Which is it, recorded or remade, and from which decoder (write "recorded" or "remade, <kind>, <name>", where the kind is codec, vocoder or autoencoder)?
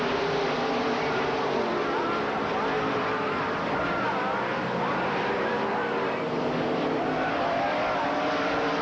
remade, vocoder, BigVGAN v2